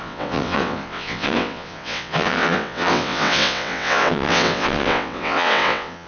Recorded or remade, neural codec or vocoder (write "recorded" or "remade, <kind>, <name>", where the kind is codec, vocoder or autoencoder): remade, vocoder, WaveNeXt